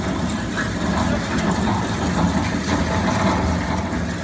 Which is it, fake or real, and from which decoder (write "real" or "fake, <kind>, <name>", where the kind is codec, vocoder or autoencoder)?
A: real